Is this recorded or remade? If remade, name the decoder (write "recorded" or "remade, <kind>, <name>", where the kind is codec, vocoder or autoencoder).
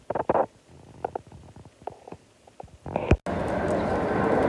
recorded